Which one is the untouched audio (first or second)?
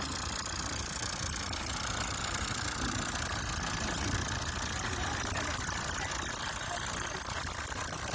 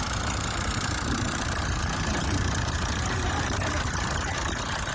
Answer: first